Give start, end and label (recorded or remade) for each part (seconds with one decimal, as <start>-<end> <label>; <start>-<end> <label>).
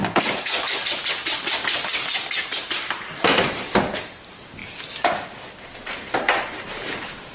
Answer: 0.0-1.0 remade; 1.0-2.6 recorded; 2.6-4.6 remade; 4.6-5.9 recorded; 5.9-7.3 remade